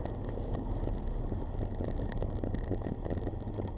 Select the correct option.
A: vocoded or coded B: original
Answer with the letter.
B